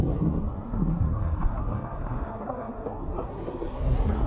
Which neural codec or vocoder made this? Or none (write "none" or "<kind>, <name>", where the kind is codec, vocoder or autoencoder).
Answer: codec, SNAC